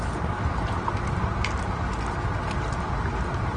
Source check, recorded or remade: recorded